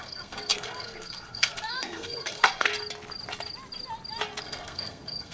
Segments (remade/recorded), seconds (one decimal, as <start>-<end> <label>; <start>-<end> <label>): 0.0-2.7 remade; 2.7-4.4 recorded; 4.4-5.3 remade